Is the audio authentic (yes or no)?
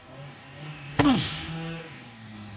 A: no